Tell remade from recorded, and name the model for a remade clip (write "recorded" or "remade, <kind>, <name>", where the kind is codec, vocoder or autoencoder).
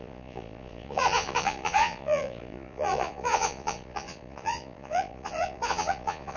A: remade, vocoder, Vocos